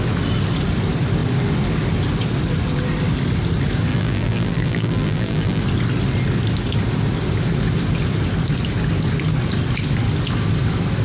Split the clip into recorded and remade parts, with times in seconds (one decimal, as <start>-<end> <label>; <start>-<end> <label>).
0.0-3.9 recorded; 3.9-5.6 remade; 5.6-11.0 recorded